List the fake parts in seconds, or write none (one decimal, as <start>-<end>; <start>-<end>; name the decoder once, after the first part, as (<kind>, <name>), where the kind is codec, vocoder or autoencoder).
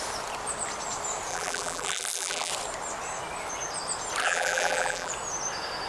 1.3-2.5 (vocoder, BigVGAN v2); 4.2-5.1